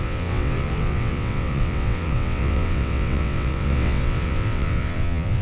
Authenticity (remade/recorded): remade